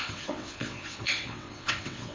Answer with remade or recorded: remade